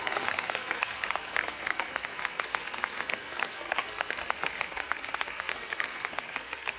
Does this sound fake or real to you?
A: fake